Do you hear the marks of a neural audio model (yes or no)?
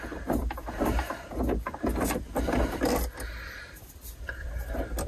no